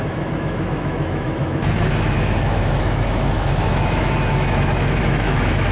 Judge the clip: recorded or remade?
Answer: remade